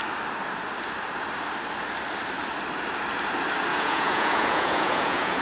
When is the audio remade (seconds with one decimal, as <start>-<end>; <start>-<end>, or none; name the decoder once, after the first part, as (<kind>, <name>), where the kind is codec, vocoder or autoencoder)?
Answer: 3.7-5.4 (vocoder, Vocos)